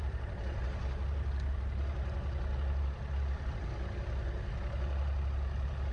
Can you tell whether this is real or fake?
real